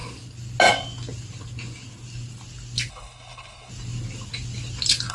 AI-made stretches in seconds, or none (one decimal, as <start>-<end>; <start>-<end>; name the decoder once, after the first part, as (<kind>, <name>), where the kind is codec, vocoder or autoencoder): 2.9-3.7 (codec, HILCodec)